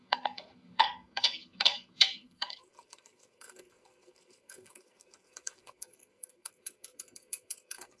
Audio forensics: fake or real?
fake